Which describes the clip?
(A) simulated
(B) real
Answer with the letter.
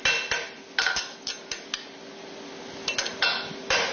B